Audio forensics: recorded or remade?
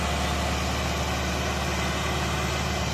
recorded